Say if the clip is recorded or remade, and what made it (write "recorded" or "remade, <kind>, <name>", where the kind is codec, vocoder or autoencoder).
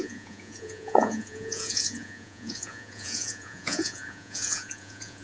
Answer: remade, vocoder, Vocos